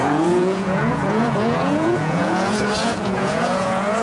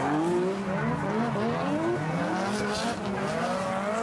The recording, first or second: second